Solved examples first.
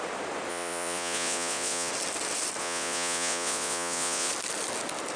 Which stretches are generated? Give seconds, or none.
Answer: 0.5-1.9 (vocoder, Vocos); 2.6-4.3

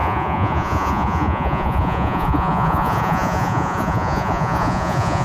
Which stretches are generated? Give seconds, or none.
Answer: 0.0-5.2 (vocoder, Vocos)

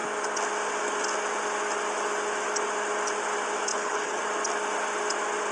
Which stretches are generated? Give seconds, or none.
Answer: 3.7-4.2 (codec, HILCodec)